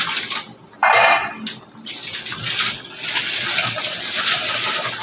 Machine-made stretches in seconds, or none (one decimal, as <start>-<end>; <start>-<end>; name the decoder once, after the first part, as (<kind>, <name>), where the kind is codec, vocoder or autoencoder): none